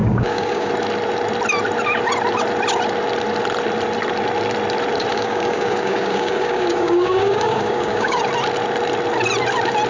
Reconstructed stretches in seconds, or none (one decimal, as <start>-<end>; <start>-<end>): 0.0-0.7; 5.1-8.2